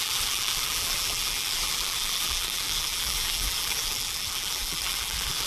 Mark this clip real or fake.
fake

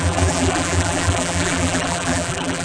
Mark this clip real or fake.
fake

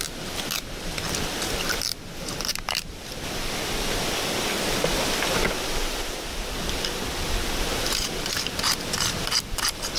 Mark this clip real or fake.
fake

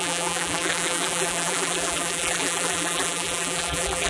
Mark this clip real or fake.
fake